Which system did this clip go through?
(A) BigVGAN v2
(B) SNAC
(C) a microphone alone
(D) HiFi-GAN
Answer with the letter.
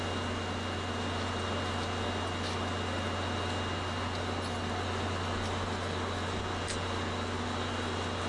C